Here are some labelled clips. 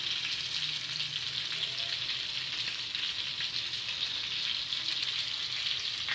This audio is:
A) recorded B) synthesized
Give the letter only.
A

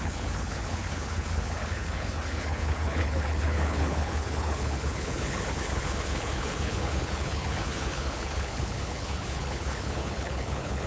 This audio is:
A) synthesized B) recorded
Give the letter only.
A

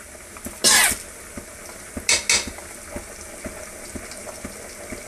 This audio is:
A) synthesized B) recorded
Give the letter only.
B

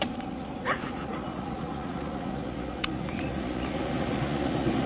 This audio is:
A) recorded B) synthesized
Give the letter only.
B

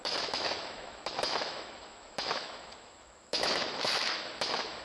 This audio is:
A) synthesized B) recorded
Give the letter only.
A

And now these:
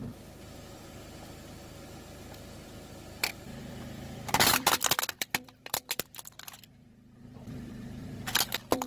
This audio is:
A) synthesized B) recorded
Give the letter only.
A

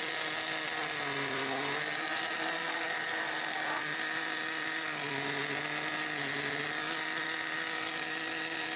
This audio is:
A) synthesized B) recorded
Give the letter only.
B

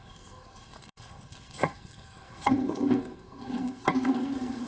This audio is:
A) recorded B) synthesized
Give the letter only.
B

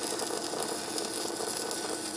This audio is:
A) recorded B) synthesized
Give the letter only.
A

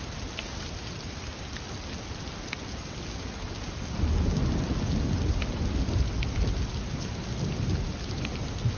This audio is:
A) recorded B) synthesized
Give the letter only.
A